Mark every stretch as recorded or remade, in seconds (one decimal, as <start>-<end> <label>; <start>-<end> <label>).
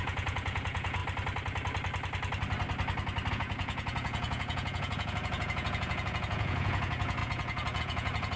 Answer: 0.0-1.0 remade; 1.0-3.3 recorded; 3.3-8.4 remade